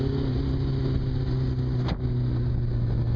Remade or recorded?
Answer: recorded